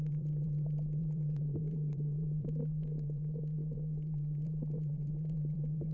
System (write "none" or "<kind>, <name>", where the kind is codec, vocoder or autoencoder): vocoder, BigVGAN v2